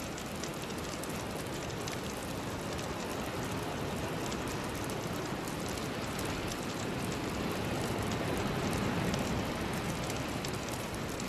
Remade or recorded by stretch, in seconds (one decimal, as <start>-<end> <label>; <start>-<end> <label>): 0.0-11.3 recorded